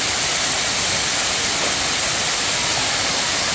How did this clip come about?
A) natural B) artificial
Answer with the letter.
A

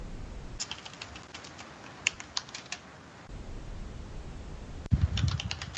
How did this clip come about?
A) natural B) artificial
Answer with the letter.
A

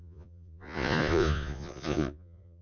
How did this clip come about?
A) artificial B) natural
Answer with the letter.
A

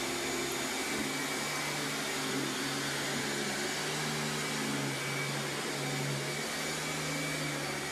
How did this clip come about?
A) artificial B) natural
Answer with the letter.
B